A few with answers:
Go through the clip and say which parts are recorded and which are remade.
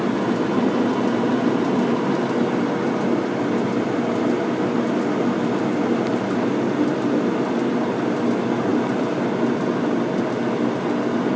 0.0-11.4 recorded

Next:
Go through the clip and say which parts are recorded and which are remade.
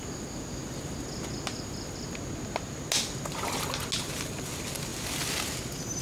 0.0-6.0 recorded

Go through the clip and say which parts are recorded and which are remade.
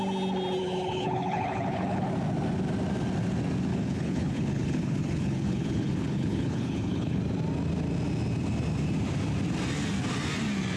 0.0-0.6 recorded; 0.6-2.1 remade; 2.1-3.7 recorded; 3.7-7.2 remade; 7.2-10.8 recorded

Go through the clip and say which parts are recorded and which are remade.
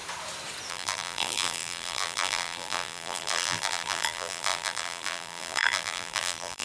0.0-0.7 recorded; 0.7-6.6 remade